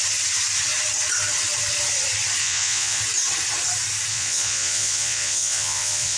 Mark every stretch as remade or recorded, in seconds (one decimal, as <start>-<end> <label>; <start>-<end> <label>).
0.0-2.4 recorded; 2.4-3.0 remade; 3.0-4.1 recorded; 4.1-6.2 remade